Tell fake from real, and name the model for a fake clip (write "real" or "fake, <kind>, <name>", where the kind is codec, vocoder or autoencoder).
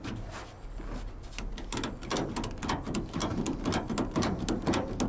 real